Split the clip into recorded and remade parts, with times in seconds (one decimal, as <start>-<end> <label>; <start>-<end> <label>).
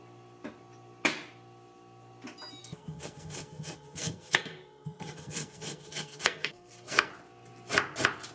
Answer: 0.0-2.6 recorded; 2.6-7.1 remade; 7.1-8.3 recorded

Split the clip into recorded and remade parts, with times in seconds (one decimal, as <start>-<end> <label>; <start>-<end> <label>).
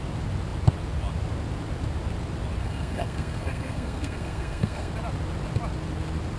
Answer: 0.0-2.6 recorded; 2.6-4.9 remade; 4.9-6.4 recorded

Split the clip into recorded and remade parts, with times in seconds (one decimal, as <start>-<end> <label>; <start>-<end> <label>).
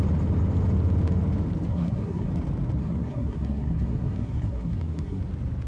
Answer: 0.0-1.7 recorded; 1.7-2.3 remade; 2.3-2.8 recorded; 2.8-5.2 remade; 5.2-5.7 recorded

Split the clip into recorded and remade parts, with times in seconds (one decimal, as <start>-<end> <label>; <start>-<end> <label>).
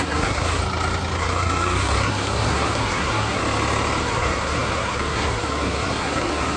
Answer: 0.0-0.6 remade; 0.6-1.2 recorded; 1.2-3.4 remade; 3.4-4.0 recorded; 4.0-6.6 remade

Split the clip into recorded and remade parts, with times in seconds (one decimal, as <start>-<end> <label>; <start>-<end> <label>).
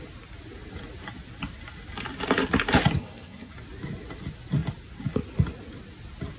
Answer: 0.0-3.0 recorded; 3.0-3.5 remade; 3.5-6.4 recorded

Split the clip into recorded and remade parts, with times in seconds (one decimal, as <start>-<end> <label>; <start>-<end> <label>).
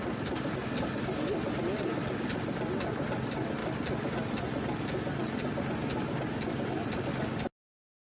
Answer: 0.0-8.0 recorded